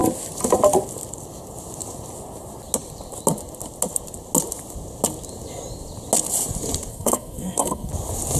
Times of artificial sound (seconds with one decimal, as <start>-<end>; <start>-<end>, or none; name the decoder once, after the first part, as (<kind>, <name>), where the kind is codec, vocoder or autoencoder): 6.9-7.9 (codec, SNAC)